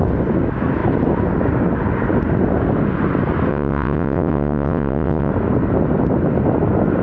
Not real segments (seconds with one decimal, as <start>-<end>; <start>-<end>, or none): 3.5-5.3